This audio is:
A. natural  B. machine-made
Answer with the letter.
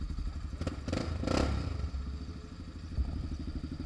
A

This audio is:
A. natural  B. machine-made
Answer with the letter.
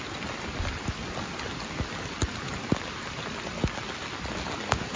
A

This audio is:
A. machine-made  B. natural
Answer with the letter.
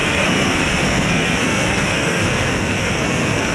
A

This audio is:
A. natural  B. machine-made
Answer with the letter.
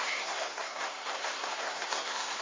B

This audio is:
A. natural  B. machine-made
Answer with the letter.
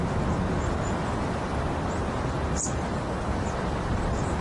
A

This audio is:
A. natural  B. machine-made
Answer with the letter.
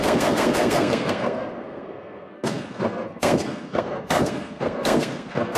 B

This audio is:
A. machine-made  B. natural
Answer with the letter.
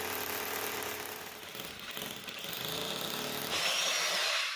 B